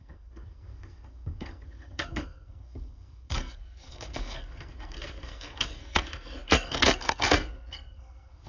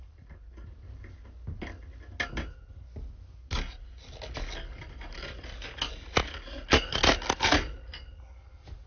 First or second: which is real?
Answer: second